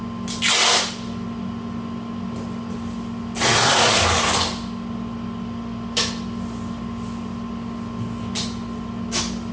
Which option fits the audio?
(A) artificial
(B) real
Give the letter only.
B